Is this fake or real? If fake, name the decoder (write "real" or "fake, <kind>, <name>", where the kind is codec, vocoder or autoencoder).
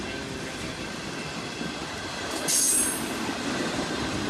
real